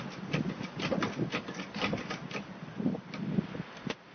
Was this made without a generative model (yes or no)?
yes